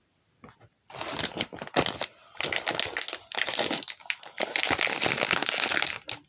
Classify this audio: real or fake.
real